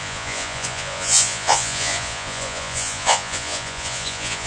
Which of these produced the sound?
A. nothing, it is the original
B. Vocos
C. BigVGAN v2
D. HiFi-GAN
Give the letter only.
B